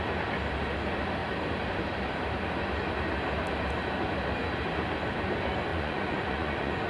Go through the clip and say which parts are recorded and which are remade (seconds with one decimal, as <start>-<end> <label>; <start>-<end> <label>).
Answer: 0.0-5.7 recorded; 5.7-6.9 remade